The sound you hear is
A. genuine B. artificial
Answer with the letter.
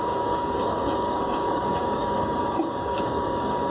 B